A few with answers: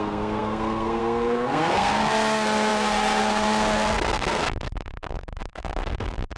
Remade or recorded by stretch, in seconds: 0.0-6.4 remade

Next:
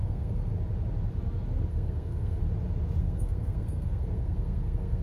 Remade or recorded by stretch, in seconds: 0.0-0.5 remade; 0.5-1.7 recorded; 1.7-2.4 remade; 2.4-3.0 recorded; 3.0-5.0 remade

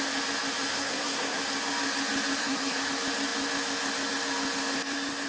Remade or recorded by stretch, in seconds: 0.0-0.7 recorded; 0.7-1.4 remade; 1.4-2.4 recorded; 2.4-2.9 remade; 2.9-5.3 recorded

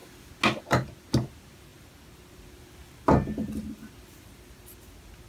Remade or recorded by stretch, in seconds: 0.0-5.3 recorded

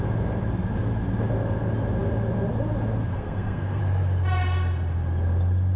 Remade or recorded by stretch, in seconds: 0.0-3.1 recorded; 3.1-3.8 remade; 3.8-5.8 recorded

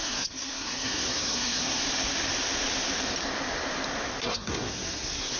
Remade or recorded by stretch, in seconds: 0.0-1.8 remade; 1.8-4.2 recorded; 4.2-5.4 remade

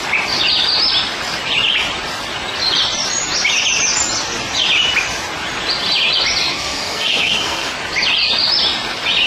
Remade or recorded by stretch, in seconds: 0.0-6.5 recorded; 6.5-7.8 remade; 7.8-9.3 recorded